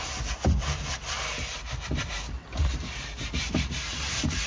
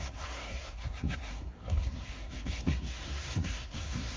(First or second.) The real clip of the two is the first